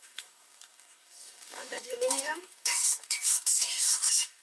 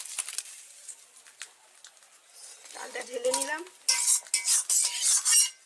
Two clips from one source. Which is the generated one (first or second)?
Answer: first